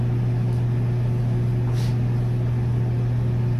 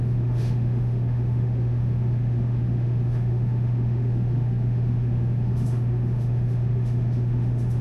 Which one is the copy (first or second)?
second